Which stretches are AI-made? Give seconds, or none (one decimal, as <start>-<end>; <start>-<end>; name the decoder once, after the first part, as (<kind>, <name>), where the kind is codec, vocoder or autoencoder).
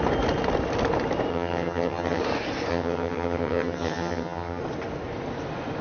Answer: 1.3-2.2 (vocoder, HiFi-GAN); 2.7-4.6